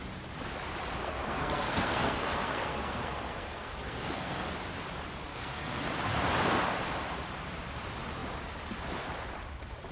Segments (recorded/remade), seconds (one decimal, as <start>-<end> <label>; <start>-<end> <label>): 0.0-1.0 recorded; 1.0-4.5 remade; 4.5-5.3 recorded; 5.3-5.8 remade; 5.8-9.9 recorded